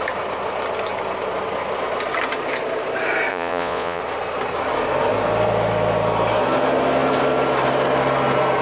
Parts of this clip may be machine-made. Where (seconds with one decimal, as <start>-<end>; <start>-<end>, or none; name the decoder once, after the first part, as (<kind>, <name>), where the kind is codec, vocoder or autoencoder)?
3.3-4.0 (vocoder, Vocos)